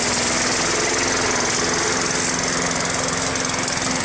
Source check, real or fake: real